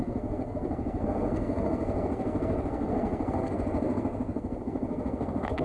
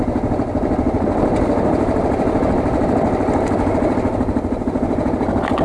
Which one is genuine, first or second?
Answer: second